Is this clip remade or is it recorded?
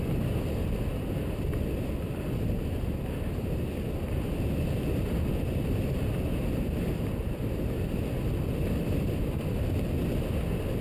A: recorded